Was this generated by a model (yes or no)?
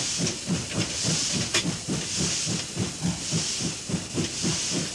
yes